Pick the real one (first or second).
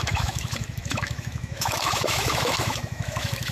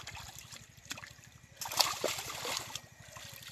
second